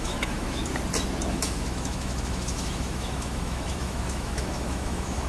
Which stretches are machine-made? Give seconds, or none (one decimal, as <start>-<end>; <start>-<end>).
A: 0.0-0.6; 1.3-5.3